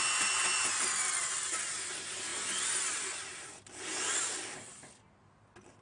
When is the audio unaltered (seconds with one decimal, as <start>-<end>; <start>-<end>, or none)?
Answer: 0.0-2.3; 5.1-5.8